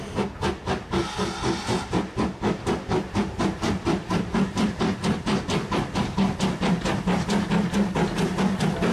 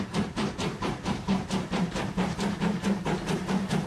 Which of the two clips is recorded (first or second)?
first